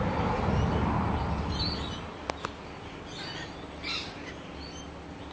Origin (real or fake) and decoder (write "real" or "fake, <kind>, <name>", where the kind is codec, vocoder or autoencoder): real